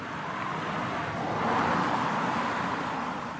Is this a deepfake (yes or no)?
no